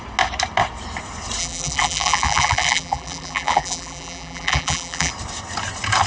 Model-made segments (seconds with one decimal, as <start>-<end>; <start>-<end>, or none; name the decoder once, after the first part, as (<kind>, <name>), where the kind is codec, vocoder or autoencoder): 1.4-5.1 (vocoder, BigVGAN v2)